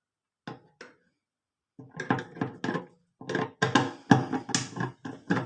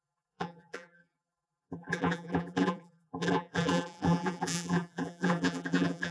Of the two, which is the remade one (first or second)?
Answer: second